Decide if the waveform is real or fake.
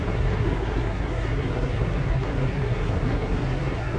fake